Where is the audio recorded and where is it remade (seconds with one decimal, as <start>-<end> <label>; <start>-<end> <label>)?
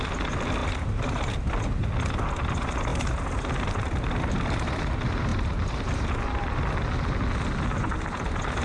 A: 0.0-0.6 recorded; 0.6-1.5 remade; 1.5-2.9 recorded; 2.9-3.8 remade; 3.8-5.3 recorded; 5.3-6.0 remade; 6.0-8.6 recorded